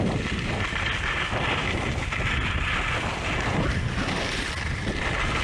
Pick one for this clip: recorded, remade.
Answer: recorded